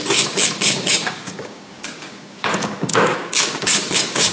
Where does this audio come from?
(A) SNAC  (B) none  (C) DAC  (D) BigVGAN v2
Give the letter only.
C